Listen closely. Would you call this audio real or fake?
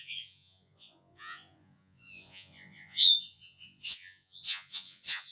fake